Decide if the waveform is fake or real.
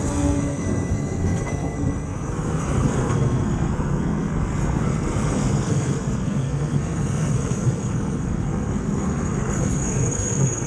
fake